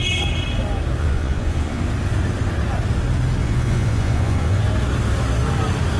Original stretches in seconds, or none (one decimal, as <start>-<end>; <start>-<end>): 0.0-1.0; 1.8-3.4; 4.6-6.0